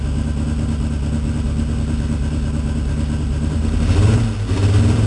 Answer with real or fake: real